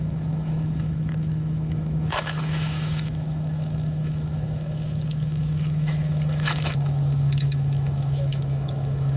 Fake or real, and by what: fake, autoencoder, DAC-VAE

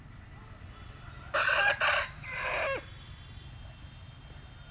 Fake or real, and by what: real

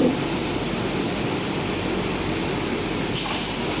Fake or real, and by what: real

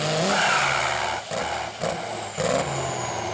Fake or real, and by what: real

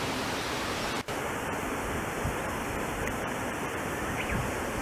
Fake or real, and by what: real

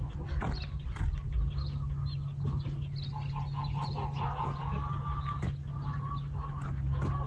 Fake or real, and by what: real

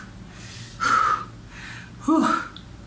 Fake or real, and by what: real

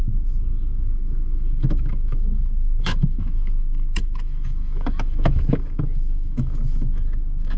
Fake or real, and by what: fake, autoencoder, DAC-VAE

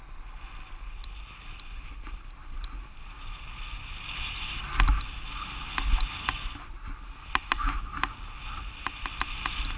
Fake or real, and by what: real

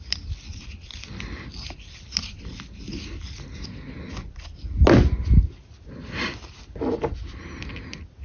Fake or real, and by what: real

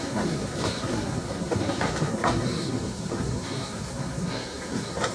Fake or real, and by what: fake, codec, SNAC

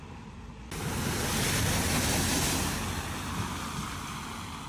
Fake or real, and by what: real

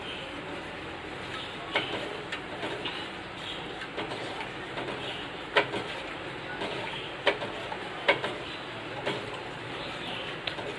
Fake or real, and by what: real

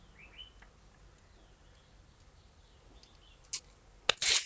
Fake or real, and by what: real